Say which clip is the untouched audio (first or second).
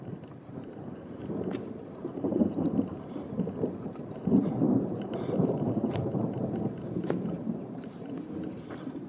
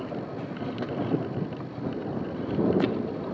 second